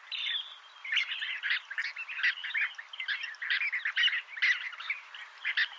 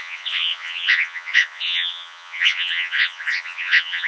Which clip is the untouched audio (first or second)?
first